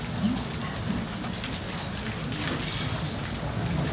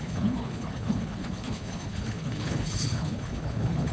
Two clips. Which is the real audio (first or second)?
first